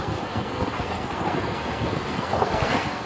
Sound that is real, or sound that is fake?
fake